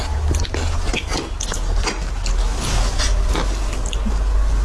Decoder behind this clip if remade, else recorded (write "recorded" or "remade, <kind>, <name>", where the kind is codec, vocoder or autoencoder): recorded